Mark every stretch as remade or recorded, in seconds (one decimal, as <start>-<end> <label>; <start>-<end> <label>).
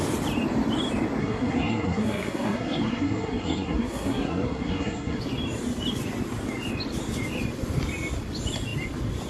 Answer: 0.0-1.2 recorded; 1.2-5.2 remade; 5.2-9.3 recorded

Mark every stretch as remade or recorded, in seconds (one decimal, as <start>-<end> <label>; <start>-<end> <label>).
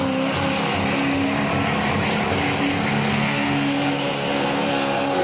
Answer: 0.0-3.1 recorded; 3.1-5.2 remade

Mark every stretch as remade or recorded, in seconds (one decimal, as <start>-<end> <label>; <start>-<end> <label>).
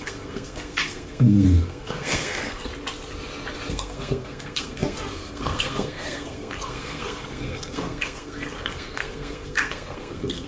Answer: 0.0-2.7 remade; 2.7-3.7 recorded; 3.7-10.5 remade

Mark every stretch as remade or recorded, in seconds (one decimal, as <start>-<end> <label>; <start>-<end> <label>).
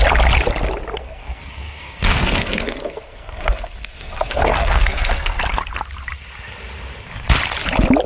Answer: 0.0-1.0 recorded; 1.0-5.4 remade; 5.4-8.1 recorded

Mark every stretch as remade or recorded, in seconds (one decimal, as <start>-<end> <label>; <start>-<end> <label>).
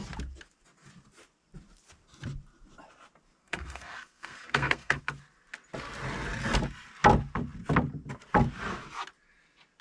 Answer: 0.0-3.4 recorded; 3.4-5.0 remade; 5.0-9.8 recorded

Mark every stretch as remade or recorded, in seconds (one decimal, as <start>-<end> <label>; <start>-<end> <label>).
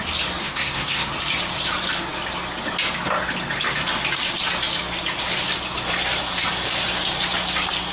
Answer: 0.0-0.4 recorded; 0.4-1.1 remade; 1.1-7.9 recorded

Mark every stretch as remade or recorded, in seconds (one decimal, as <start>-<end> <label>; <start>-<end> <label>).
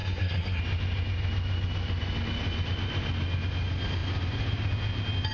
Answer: 0.0-0.6 remade; 0.6-5.3 recorded